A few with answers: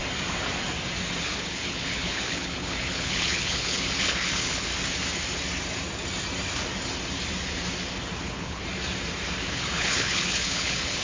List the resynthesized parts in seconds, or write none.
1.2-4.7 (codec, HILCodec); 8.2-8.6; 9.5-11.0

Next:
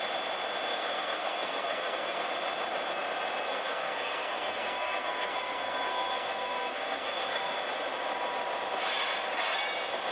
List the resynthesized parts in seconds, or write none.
0.7-2.3 (codec, SNAC); 3.5-7.6

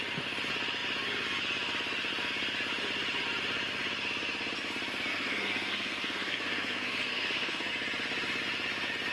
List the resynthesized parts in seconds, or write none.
5.1-7.7 (codec, SNAC)